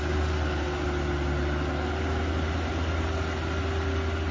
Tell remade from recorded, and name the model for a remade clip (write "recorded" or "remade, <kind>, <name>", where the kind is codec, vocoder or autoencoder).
recorded